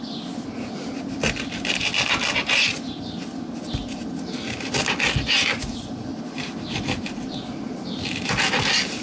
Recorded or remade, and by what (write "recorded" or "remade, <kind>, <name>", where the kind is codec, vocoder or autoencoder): recorded